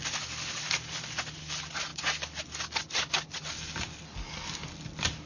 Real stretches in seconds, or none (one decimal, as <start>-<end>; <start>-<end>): 0.0-5.3